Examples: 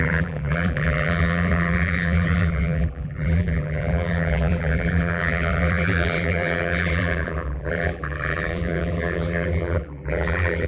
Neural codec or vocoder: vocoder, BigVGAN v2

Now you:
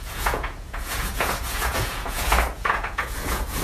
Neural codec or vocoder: vocoder, Vocos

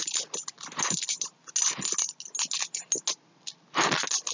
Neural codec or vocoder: none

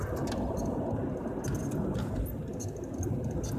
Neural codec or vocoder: none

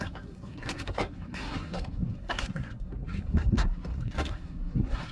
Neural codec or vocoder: codec, SNAC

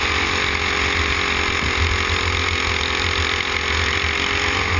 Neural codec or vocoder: none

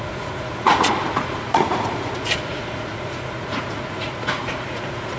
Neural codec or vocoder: vocoder, Vocos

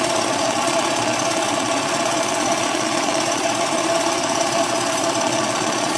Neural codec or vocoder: vocoder, Vocos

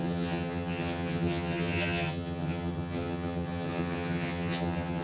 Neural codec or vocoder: vocoder, HiFi-GAN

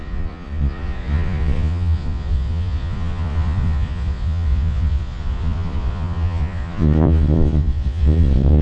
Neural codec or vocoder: vocoder, Vocos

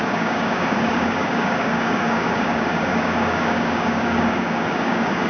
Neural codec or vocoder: codec, DAC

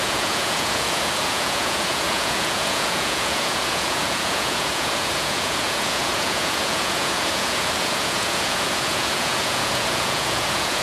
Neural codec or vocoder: vocoder, Vocos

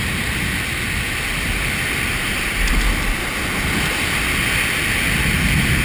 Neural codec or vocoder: none